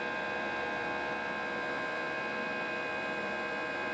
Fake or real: fake